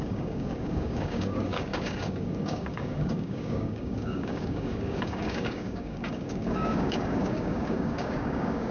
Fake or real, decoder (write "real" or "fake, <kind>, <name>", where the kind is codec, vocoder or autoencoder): fake, codec, DAC